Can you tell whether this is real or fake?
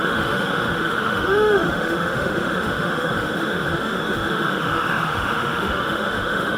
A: fake